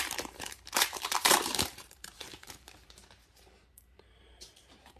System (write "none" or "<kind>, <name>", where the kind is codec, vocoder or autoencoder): vocoder, BigVGAN v2